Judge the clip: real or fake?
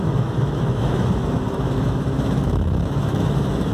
fake